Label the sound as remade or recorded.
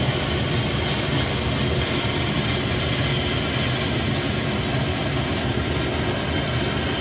recorded